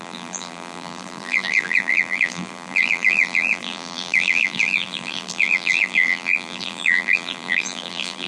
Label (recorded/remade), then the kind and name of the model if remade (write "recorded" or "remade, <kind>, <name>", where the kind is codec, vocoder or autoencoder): remade, vocoder, BigVGAN v2